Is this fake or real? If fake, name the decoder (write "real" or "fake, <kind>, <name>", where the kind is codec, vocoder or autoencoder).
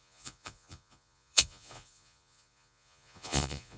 fake, vocoder, Vocos